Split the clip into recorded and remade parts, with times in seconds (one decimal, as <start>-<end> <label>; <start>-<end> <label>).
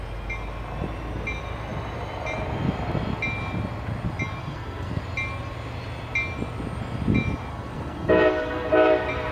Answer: 0.0-4.4 recorded; 4.4-5.0 remade; 5.0-7.5 recorded; 7.5-8.7 remade; 8.7-9.3 recorded